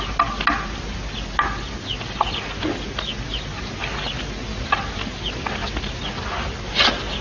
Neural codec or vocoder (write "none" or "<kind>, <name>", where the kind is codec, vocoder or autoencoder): none